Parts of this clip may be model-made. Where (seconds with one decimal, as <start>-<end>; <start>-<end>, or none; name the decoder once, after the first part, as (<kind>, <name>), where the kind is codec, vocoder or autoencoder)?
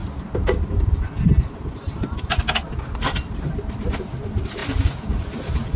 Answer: none